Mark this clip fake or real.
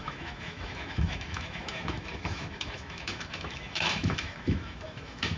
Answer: fake